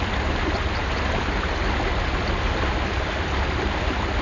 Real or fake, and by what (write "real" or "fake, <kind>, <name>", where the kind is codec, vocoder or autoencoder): real